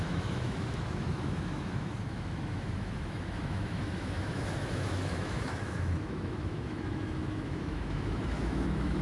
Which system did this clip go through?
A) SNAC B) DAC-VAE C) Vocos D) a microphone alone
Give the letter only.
B